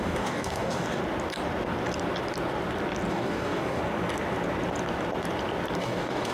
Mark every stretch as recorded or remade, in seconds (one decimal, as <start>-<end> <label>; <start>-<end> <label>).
0.0-1.0 remade; 1.0-3.1 recorded; 3.1-3.8 remade; 3.8-5.8 recorded; 5.8-6.3 remade